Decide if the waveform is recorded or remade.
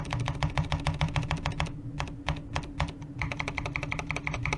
recorded